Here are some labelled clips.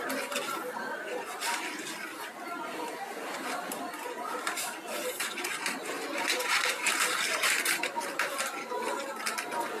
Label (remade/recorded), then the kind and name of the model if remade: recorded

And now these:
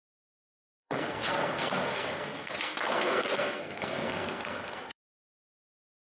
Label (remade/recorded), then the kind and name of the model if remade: remade, codec, SNAC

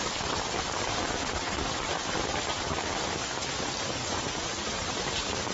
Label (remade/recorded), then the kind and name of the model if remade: remade, vocoder, BigVGAN v2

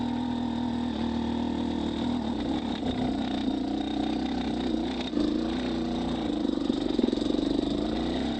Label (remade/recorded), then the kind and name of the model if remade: recorded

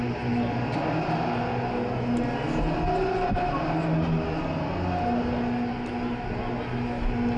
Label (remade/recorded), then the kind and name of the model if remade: recorded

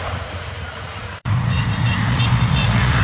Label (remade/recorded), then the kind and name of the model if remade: remade, vocoder, Vocos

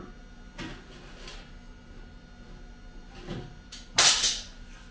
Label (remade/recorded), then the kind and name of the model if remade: recorded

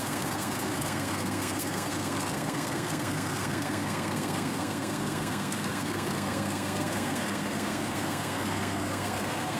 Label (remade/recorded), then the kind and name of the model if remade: remade, codec, SNAC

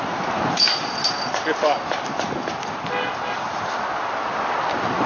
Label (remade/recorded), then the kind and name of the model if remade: recorded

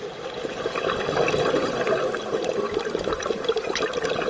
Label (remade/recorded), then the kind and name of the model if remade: recorded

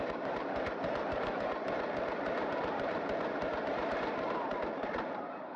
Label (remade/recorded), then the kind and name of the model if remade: remade, vocoder, BigVGAN v2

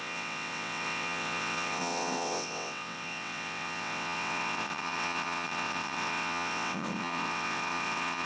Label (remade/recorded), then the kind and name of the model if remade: remade, vocoder, WaveNeXt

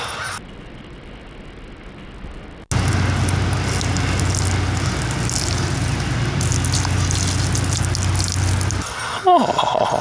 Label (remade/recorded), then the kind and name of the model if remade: recorded